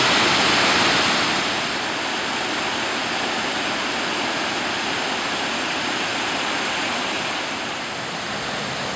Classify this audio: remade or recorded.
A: recorded